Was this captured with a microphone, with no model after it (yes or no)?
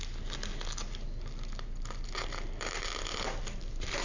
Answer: yes